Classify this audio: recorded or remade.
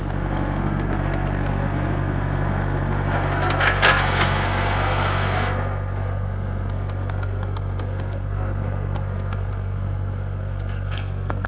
remade